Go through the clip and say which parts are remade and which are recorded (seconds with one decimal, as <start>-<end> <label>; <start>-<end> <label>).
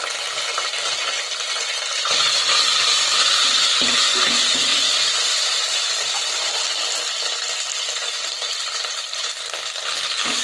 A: 0.0-10.4 recorded